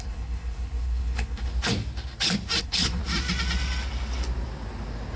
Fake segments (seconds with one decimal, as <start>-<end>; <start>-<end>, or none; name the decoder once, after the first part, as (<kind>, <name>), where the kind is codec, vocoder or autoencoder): 0.0-1.5 (codec, HILCodec); 2.6-3.0